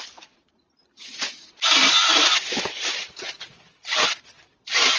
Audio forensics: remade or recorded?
remade